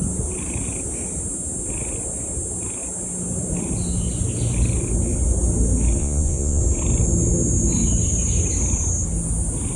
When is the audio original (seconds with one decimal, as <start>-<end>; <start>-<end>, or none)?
0.0-6.0; 6.6-9.8